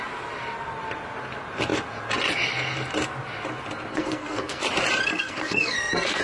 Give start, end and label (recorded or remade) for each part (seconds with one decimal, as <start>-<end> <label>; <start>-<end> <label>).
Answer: 0.0-3.9 recorded; 3.9-4.6 remade; 4.6-5.1 recorded; 5.1-6.2 remade